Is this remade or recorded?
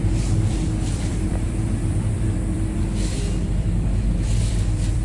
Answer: remade